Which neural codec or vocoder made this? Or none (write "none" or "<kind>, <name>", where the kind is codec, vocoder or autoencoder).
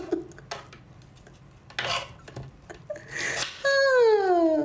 none